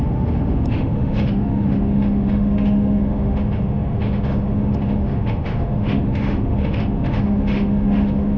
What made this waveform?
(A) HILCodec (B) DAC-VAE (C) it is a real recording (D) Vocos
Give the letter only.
B